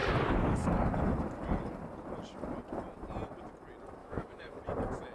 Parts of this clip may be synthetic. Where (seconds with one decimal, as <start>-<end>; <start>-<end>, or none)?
4.0-4.6